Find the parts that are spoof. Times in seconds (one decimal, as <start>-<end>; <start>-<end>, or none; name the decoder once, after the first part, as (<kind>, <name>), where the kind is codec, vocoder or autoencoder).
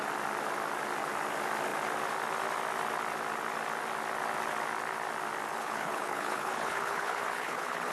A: 5.6-7.9 (codec, HILCodec)